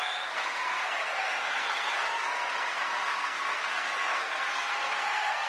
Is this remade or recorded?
remade